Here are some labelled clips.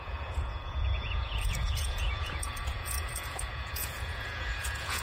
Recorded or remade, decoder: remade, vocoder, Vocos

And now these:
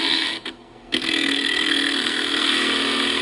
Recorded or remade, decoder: remade, codec, SNAC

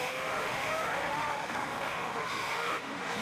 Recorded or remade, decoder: remade, autoencoder, DAC-VAE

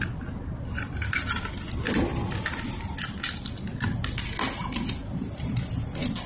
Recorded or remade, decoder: recorded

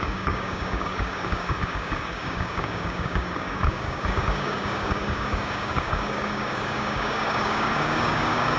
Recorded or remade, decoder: remade, codec, DAC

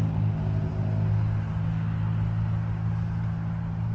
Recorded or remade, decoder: recorded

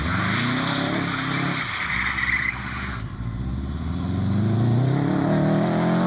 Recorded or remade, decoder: recorded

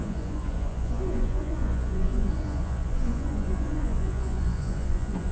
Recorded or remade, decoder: remade, vocoder, Vocos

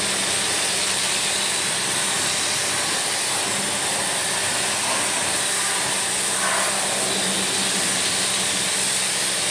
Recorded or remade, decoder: recorded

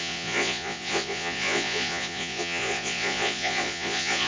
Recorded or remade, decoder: remade, vocoder, Vocos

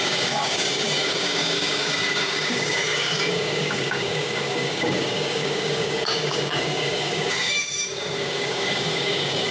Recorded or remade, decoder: remade, codec, DAC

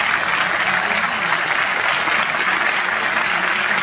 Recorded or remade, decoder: recorded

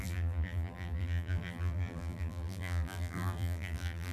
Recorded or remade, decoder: remade, vocoder, BigVGAN v2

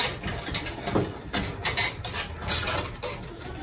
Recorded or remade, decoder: recorded